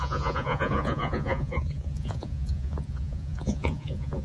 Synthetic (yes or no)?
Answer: yes